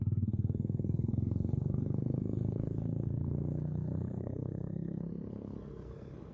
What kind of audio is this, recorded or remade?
remade